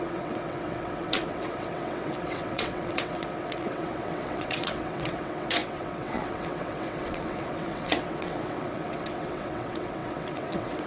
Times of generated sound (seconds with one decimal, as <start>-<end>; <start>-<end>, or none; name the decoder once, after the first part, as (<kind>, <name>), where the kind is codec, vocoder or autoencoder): 0.0-10.9 (vocoder, WaveNeXt)